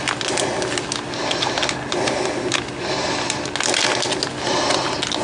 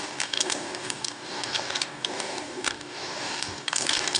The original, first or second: first